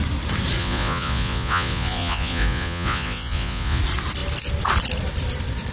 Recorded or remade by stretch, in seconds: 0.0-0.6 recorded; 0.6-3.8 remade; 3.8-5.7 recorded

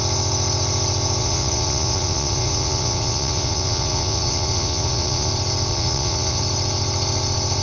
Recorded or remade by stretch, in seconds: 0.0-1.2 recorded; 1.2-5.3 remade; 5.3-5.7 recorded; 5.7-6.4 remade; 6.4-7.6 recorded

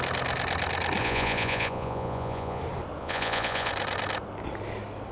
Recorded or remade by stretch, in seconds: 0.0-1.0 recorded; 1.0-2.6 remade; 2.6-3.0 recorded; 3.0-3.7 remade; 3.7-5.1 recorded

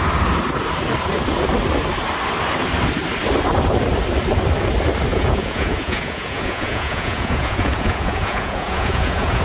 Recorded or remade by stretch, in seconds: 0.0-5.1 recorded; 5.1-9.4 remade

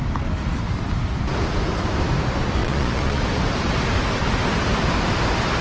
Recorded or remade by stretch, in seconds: 0.0-2.6 recorded; 2.6-3.2 remade; 3.2-5.6 recorded